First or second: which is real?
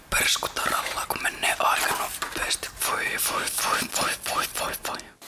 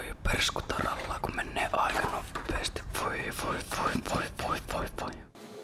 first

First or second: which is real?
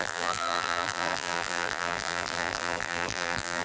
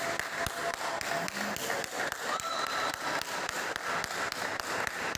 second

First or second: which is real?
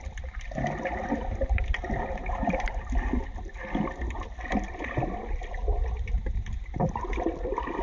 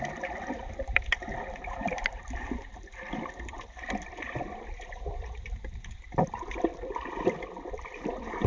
first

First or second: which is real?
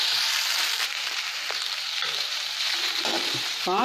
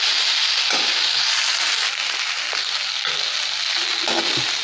second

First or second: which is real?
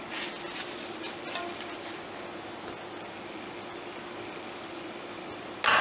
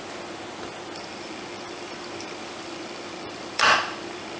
first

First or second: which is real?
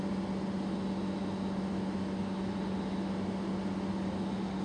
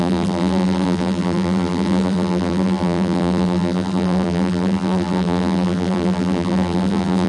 first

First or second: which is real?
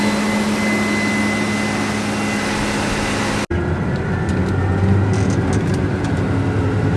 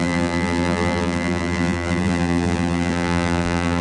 first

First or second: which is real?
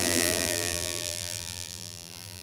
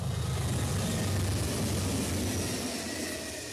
second